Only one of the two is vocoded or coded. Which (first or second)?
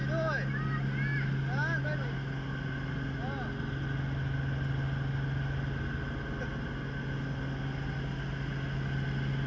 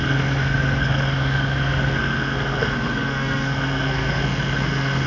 second